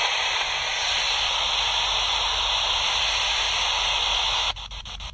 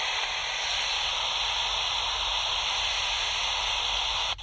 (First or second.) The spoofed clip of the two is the second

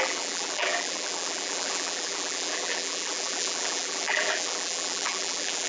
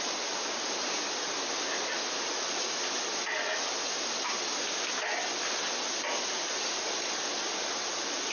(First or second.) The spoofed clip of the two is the first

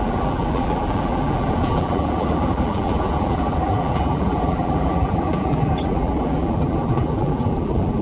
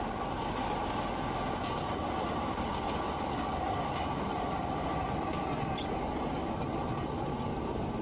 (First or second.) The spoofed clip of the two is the first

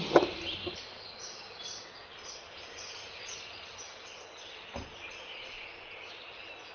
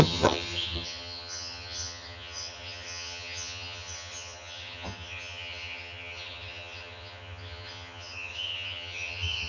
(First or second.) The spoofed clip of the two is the second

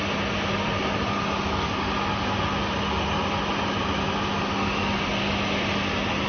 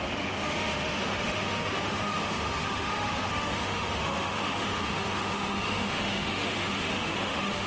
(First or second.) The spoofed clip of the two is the second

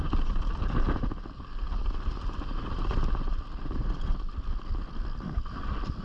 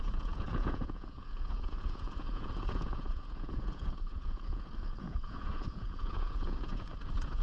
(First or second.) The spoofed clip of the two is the second